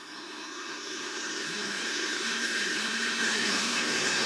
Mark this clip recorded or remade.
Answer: remade